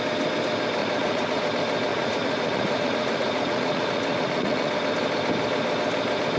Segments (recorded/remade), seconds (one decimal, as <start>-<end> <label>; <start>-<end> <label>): 0.0-0.8 recorded; 0.8-1.4 remade; 1.4-1.9 recorded; 1.9-4.7 remade; 4.7-6.4 recorded